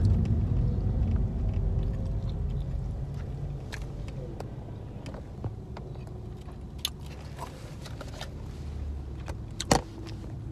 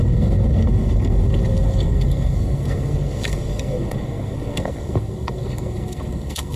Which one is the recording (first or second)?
first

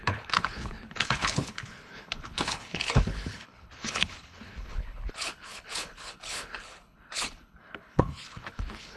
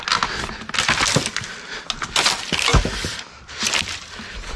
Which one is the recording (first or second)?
second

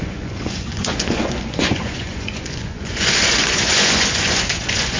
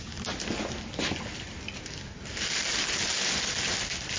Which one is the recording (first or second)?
second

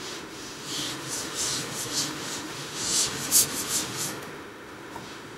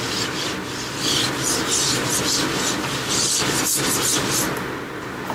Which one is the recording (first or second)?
second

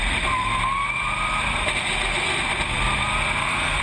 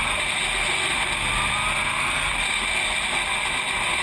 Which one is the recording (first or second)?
second